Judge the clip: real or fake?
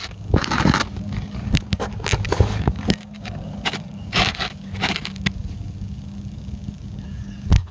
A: fake